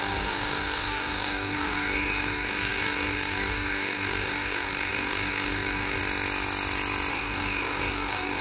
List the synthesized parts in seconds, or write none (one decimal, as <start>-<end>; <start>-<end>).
0.0-6.0; 7.1-8.4